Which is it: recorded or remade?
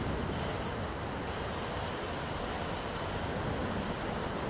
recorded